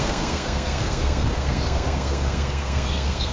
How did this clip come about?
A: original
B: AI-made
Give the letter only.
B